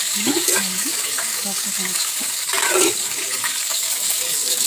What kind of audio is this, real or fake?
fake